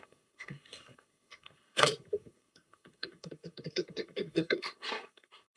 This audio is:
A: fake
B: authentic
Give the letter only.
A